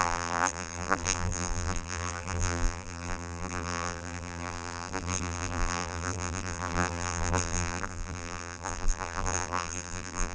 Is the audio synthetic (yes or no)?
yes